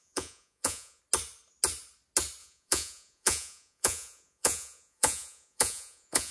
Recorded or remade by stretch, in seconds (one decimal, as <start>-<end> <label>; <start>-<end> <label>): 0.0-1.0 remade; 1.0-2.4 recorded; 2.4-6.3 remade